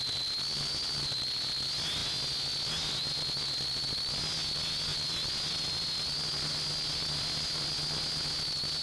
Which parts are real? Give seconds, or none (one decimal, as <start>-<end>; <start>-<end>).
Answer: 0.0-8.8

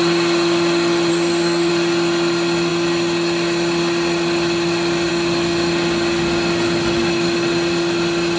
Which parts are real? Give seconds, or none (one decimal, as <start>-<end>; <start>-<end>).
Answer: 0.0-1.1; 1.7-8.4

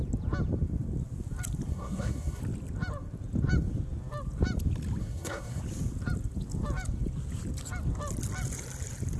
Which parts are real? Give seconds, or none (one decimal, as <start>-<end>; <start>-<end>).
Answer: 0.0-1.7; 2.4-5.0; 5.6-9.2

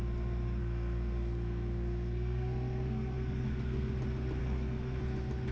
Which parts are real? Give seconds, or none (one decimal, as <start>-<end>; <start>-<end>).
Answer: 0.0-0.6; 3.9-4.4; 5.0-5.5